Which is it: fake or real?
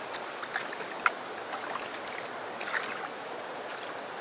real